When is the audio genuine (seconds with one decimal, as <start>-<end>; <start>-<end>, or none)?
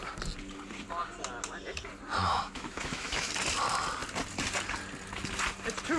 0.0-2.2; 3.3-6.0